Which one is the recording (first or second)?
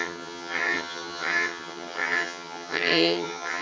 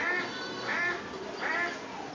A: second